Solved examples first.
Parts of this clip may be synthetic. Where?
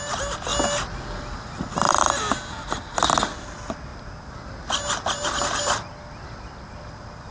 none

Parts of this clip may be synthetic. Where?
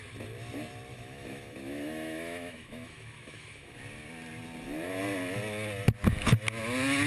0.9-3.8 (autoencoder, DAC-VAE)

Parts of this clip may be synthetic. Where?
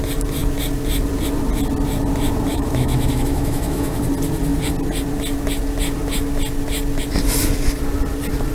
2.5-4.0 (autoencoder, DAC-VAE)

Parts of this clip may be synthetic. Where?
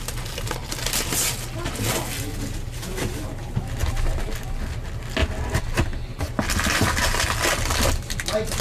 none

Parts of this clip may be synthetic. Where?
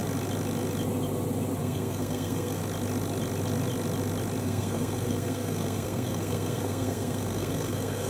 1.6-2.6 (codec, SNAC); 4.4-8.1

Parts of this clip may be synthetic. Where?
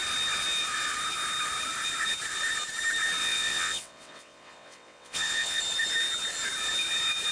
3.2-5.6 (vocoder, WaveNeXt)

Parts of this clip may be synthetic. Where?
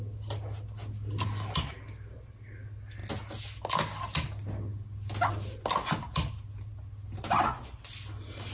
none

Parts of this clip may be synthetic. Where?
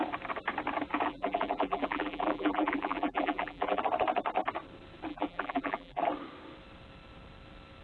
1.1-3.8 (vocoder, BigVGAN v2); 5.1-6.0